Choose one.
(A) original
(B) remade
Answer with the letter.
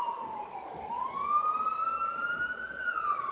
A